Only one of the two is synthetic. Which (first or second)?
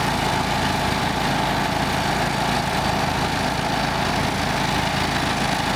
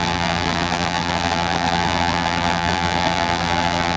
second